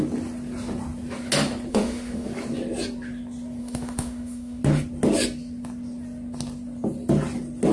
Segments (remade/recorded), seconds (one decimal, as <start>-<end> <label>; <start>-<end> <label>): 0.0-1.7 recorded; 1.7-2.3 remade; 2.3-3.6 recorded; 3.6-4.6 remade; 4.6-7.7 recorded